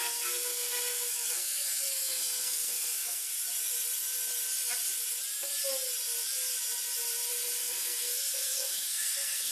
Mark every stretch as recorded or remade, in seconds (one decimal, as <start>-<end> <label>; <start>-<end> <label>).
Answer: 0.0-3.3 remade; 3.3-7.6 recorded; 7.6-9.5 remade